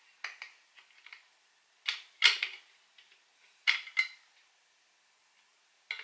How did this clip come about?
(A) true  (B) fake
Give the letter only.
A